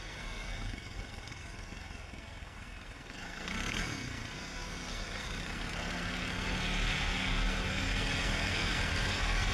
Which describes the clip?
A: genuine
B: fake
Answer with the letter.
B